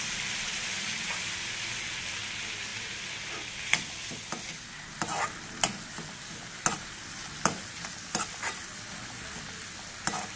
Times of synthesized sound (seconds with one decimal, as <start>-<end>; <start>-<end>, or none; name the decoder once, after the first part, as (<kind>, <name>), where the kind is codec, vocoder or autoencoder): 2.7-3.3 (vocoder, BigVGAN v2)